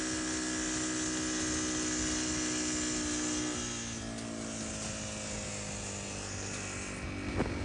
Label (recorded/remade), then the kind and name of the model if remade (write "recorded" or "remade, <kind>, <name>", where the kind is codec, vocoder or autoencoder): recorded